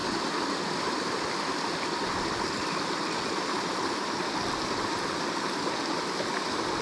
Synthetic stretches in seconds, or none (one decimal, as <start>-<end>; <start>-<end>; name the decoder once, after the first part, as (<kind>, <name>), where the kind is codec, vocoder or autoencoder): 0.0-4.1 (vocoder, BigVGAN v2)